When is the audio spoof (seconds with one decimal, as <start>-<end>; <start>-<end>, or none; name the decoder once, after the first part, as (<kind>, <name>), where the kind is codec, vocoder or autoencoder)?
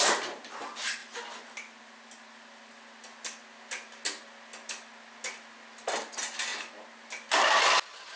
none